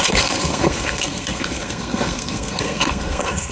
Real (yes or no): no